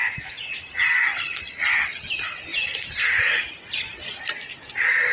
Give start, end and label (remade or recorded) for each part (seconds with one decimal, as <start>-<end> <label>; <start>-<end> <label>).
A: 0.0-5.1 recorded